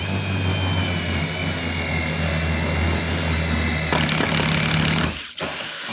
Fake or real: real